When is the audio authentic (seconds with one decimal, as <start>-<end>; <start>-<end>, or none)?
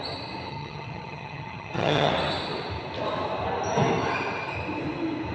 0.0-0.5; 2.1-5.3